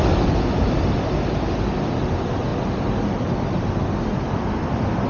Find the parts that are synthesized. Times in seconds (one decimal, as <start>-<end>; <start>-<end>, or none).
none